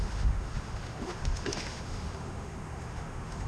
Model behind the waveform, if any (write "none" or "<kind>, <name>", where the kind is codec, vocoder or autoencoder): autoencoder, DAC-VAE